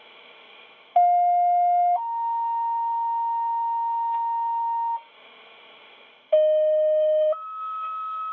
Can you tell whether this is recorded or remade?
remade